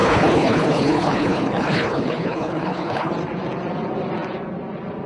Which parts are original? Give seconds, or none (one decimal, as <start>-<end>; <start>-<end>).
3.1-5.1